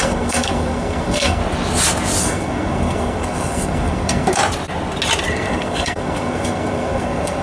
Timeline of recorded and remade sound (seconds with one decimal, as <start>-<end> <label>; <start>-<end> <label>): 0.0-1.4 remade; 1.4-2.2 recorded; 2.2-4.4 remade; 4.4-5.3 recorded; 5.3-7.4 remade